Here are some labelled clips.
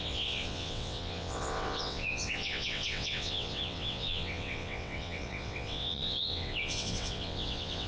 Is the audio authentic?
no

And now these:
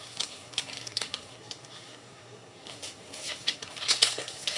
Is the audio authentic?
no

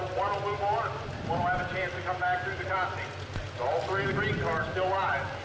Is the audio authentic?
yes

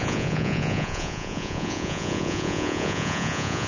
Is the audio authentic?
no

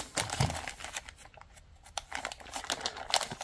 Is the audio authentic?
yes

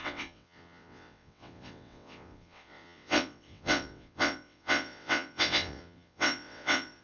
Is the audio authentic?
no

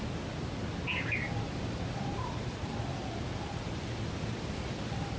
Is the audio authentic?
yes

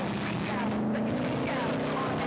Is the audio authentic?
yes